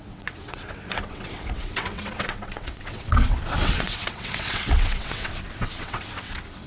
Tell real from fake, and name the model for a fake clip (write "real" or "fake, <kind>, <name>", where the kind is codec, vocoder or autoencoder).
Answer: fake, vocoder, WaveNeXt